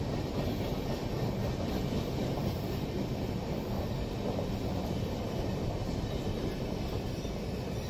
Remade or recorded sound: recorded